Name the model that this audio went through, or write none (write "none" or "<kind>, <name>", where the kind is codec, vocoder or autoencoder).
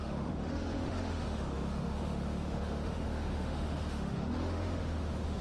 autoencoder, DAC-VAE